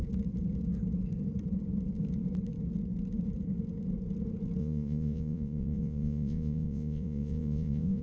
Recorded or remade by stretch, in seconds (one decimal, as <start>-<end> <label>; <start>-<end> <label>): 0.0-4.6 recorded; 4.6-8.0 remade